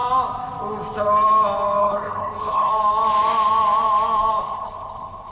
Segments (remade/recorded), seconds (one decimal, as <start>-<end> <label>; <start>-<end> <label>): 0.0-1.8 recorded; 1.8-2.7 remade; 2.7-4.4 recorded; 4.4-5.3 remade